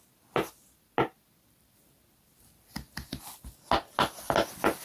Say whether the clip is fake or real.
real